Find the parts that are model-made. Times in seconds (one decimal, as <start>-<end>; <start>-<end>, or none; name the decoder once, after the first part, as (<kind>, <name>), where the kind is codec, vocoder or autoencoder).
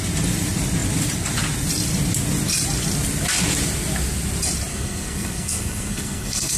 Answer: 4.7-6.6 (codec, SNAC)